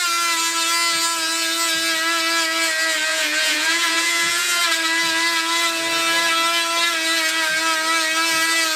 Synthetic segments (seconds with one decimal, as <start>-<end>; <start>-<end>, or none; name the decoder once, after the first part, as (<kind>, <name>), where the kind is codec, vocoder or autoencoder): 3.1-4.6 (vocoder, Vocos)